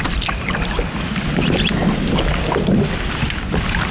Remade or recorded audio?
recorded